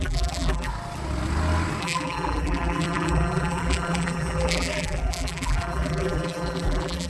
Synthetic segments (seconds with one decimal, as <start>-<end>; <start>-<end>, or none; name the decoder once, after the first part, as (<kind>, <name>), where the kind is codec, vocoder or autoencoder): 0.0-0.7 (vocoder, BigVGAN v2); 1.8-7.1